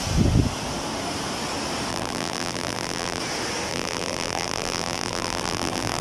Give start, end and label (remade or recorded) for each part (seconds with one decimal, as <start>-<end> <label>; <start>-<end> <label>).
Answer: 0.0-1.9 recorded; 1.9-3.2 remade; 3.2-3.7 recorded; 3.7-6.0 remade